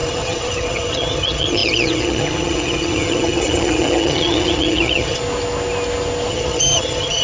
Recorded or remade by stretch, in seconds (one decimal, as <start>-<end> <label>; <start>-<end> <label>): 0.0-5.2 remade; 5.2-6.3 recorded; 6.3-7.2 remade